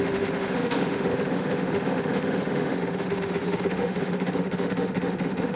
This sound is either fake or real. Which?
fake